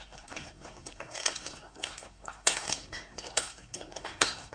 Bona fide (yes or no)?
no